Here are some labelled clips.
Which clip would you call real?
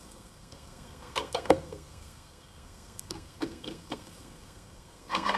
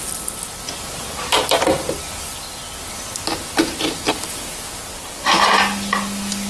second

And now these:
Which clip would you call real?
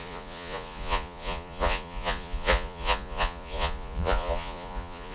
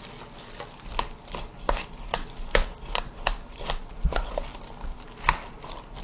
second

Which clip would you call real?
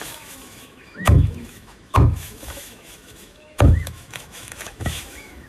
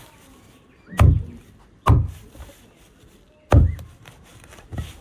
second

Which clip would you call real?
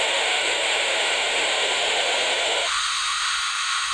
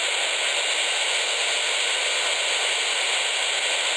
second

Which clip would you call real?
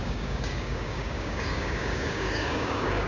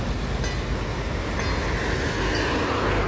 second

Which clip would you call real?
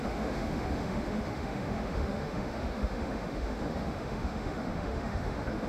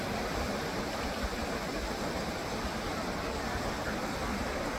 second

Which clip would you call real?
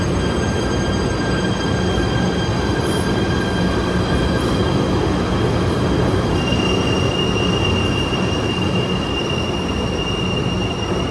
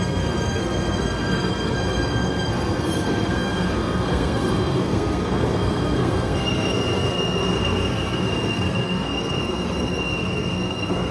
first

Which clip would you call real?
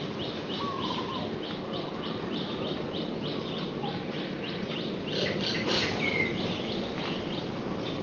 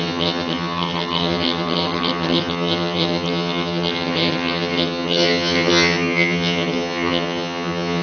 first